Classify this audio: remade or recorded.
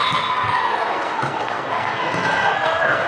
remade